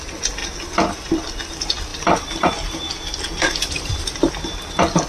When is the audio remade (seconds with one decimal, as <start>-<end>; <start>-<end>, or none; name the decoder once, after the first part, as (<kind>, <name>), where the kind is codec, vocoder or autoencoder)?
1.9-4.3 (vocoder, BigVGAN v2)